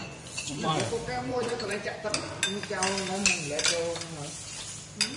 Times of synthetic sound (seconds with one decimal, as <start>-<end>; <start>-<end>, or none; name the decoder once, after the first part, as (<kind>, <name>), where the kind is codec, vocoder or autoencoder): 0.0-0.7 (vocoder, Vocos); 1.3-2.1